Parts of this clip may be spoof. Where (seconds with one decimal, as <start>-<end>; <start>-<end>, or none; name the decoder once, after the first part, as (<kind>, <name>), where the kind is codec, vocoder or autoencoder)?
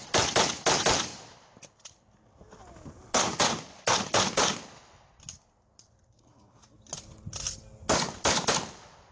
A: none